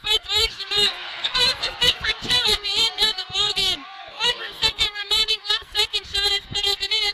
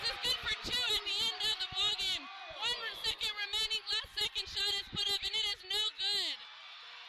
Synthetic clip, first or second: first